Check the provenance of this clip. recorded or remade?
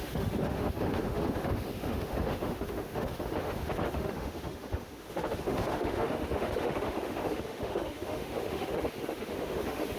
remade